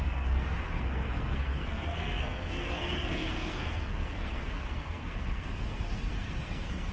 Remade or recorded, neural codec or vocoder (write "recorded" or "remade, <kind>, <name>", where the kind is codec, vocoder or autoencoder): remade, codec, SNAC